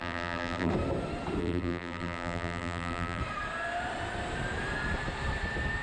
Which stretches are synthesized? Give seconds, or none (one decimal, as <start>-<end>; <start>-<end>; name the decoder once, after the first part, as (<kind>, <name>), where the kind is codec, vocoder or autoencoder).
0.0-0.7 (vocoder, BigVGAN v2); 1.4-3.2